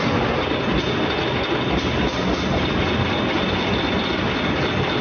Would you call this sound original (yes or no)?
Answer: yes